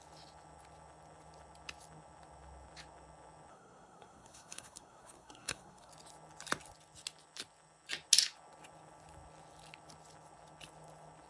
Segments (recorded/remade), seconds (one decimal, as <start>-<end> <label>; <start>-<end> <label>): 0.0-3.5 recorded; 3.5-5.9 remade; 5.9-11.3 recorded